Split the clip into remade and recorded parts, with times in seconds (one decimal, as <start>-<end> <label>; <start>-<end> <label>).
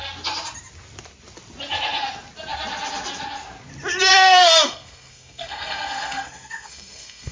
0.0-4.1 recorded; 4.1-7.3 remade